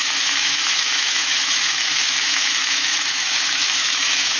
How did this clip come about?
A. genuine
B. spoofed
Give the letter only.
B